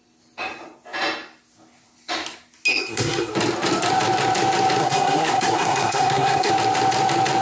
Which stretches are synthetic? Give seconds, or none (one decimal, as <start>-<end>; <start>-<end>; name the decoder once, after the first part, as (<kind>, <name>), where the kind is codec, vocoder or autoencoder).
2.7-3.3 (codec, SNAC); 4.8-6.5